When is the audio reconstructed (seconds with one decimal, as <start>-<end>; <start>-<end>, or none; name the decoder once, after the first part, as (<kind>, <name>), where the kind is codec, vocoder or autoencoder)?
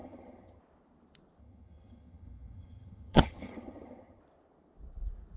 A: 0.0-0.6 (vocoder, HiFi-GAN); 1.4-4.2